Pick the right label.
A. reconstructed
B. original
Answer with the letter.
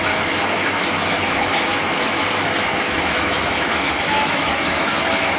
A